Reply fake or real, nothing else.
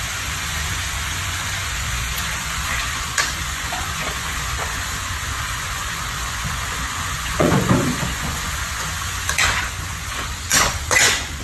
fake